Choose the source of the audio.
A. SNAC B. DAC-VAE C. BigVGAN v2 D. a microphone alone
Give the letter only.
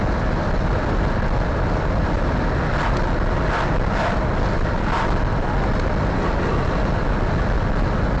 D